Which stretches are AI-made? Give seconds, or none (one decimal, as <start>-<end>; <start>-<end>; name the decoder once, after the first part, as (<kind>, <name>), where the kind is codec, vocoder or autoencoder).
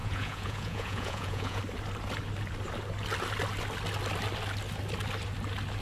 0.0-1.6 (vocoder, Vocos)